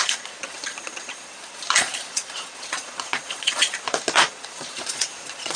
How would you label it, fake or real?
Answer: fake